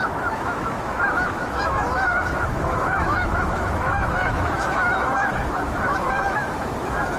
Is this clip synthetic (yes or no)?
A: yes